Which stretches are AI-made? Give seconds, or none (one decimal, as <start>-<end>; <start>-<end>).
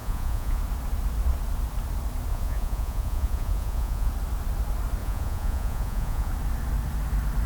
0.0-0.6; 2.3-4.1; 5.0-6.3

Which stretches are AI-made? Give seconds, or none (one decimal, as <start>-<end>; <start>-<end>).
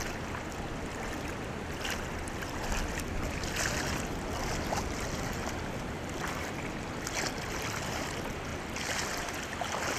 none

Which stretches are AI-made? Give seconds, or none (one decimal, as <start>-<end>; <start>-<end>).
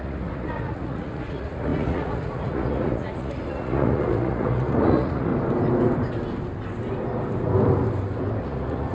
0.0-5.3; 8.4-8.9